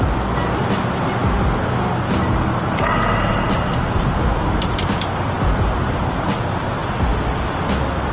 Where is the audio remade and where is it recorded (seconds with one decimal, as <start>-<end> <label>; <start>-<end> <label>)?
0.0-8.1 recorded